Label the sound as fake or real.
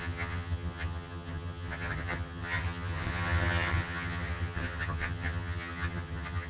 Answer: fake